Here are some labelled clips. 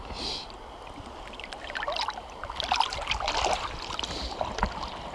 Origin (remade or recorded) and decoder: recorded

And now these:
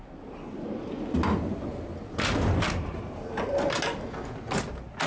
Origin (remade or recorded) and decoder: recorded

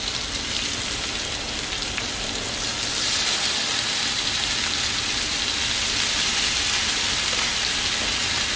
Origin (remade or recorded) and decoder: recorded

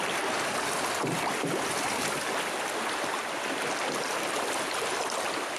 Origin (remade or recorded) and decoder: recorded